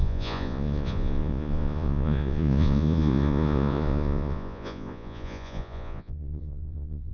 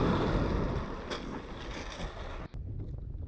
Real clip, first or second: second